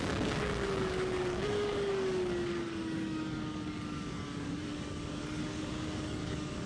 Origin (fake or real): fake